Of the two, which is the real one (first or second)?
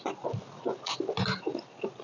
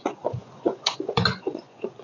first